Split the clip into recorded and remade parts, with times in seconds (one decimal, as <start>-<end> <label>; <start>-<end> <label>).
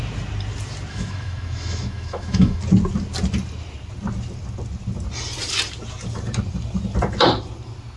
0.0-0.9 recorded; 0.9-2.6 remade; 2.6-8.0 recorded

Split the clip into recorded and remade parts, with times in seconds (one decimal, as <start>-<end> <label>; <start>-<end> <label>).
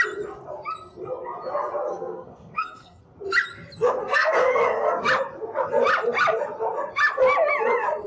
0.0-1.9 recorded; 1.9-3.0 remade; 3.0-4.0 recorded; 4.0-5.0 remade; 5.0-8.1 recorded